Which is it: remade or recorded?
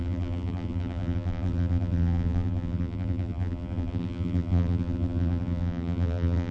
remade